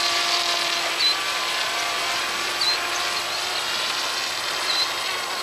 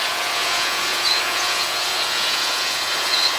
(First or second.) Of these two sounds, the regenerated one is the second